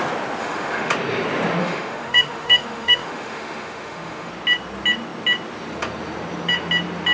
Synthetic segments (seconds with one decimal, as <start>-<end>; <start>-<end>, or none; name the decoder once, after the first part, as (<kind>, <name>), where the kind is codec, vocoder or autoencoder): 0.4-0.9 (autoencoder, DAC-VAE); 1.6-4.3